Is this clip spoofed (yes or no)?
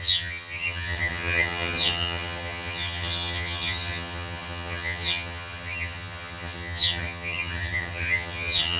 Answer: yes